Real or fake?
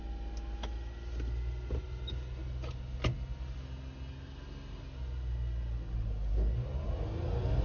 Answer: real